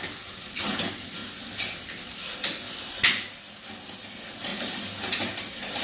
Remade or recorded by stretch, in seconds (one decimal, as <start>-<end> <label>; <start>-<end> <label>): 0.0-5.8 recorded